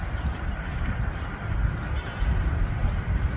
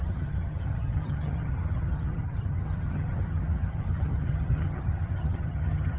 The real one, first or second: first